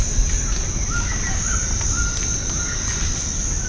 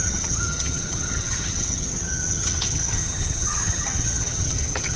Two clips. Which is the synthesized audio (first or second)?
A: second